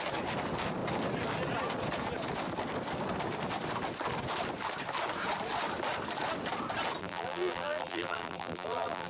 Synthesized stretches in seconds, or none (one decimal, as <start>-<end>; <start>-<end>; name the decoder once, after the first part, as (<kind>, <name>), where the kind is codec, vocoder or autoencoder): 7.0-9.1 (vocoder, BigVGAN v2)